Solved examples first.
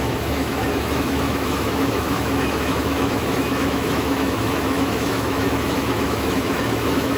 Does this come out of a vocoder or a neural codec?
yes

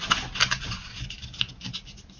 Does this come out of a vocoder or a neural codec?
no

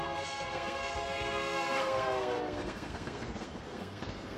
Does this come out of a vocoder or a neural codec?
yes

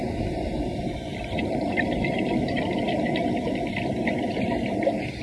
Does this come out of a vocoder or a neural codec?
no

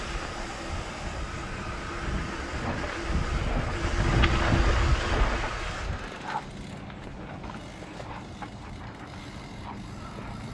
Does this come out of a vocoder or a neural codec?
no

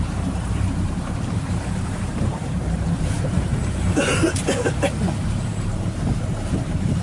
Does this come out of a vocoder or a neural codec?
yes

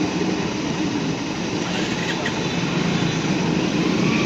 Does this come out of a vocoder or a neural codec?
no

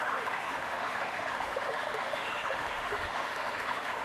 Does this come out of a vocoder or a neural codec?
yes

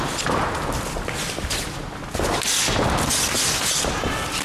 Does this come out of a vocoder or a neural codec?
no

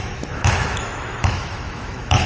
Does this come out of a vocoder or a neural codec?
yes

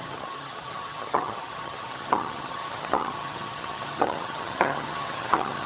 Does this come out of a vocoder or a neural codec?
yes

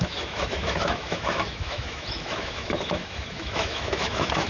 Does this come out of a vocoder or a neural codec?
yes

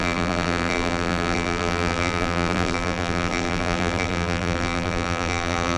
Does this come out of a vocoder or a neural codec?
yes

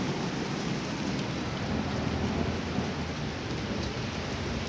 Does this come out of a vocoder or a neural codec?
yes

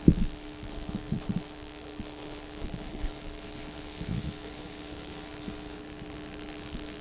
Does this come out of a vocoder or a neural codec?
yes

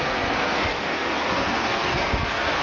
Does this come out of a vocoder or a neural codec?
yes